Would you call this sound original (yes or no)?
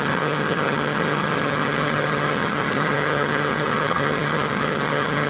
no